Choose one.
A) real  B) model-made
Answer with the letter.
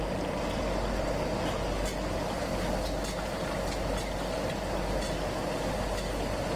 A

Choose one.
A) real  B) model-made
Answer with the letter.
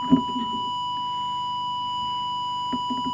A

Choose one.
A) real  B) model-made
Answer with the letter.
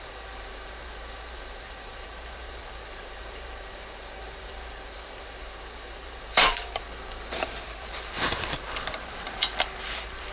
B